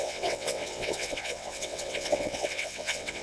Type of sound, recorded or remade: remade